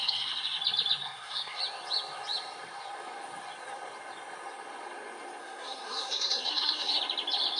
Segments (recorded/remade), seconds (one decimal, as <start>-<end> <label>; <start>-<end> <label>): 0.0-0.6 remade; 0.6-1.0 recorded; 1.0-1.6 remade; 1.6-5.4 recorded; 5.4-7.0 remade; 7.0-7.6 recorded